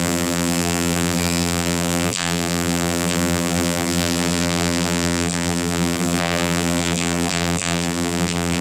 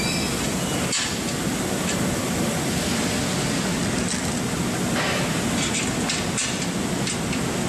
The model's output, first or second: first